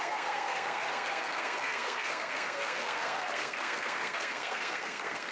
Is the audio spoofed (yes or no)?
yes